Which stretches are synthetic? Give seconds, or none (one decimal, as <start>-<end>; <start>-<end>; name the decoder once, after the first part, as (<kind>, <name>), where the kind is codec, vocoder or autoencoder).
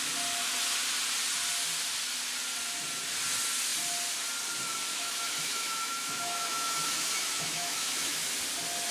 4.9-8.3 (autoencoder, DAC-VAE)